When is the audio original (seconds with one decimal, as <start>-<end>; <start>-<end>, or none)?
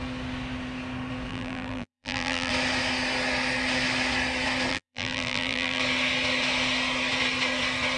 0.0-1.3; 2.5-4.7; 5.8-8.0